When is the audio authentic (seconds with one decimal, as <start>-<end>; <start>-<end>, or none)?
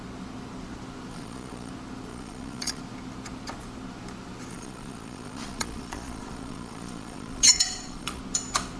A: 0.0-1.1; 1.7-2.1; 2.8-4.5; 8.2-8.8